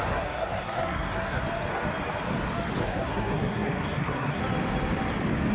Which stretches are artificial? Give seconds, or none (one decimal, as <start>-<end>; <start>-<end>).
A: 0.0-1.4; 2.8-4.4